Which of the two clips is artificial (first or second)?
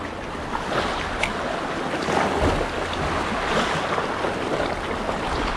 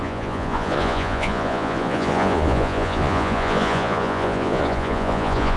second